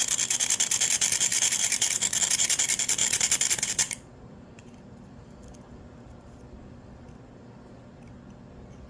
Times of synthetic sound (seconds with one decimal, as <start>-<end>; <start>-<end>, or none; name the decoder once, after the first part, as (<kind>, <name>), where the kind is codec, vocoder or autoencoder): 1.3-2.2 (vocoder, BigVGAN v2); 3.0-7.0